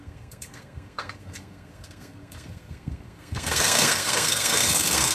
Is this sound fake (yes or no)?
yes